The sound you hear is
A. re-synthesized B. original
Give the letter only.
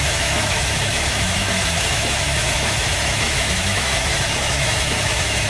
A